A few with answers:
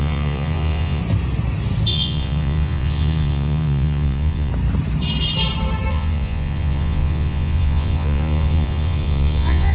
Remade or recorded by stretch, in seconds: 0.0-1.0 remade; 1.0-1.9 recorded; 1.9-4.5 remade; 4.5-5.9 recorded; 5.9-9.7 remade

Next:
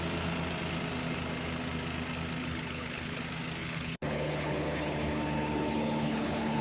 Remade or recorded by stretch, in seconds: 0.0-2.4 recorded; 2.4-3.2 remade; 3.2-3.6 recorded; 3.6-6.6 remade

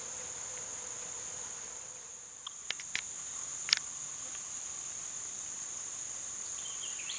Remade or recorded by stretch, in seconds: 0.0-7.2 recorded

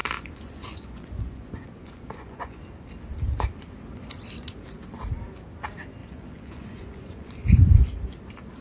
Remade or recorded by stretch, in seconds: 0.0-2.6 remade; 2.6-6.0 recorded; 6.0-7.8 remade; 7.8-8.6 recorded

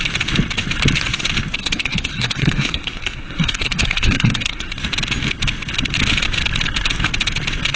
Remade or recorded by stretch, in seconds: 0.0-1.6 recorded; 1.6-4.7 remade; 4.7-7.8 recorded

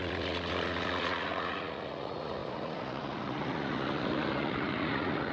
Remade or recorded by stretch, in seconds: 0.0-5.3 remade

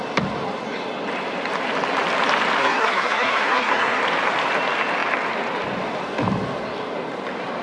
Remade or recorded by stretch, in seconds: 0.0-2.6 recorded; 2.6-4.0 remade; 4.0-7.6 recorded

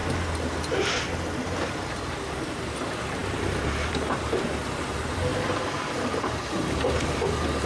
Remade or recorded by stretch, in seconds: 0.0-7.7 recorded